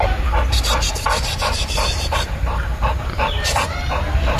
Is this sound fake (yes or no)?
no